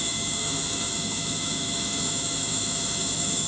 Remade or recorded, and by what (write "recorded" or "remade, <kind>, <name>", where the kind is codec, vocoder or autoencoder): remade, autoencoder, DAC-VAE